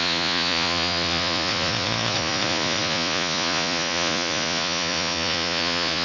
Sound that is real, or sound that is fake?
fake